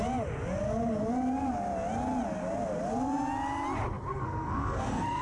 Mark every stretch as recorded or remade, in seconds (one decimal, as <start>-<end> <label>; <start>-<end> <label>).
0.0-4.1 recorded; 4.1-5.2 remade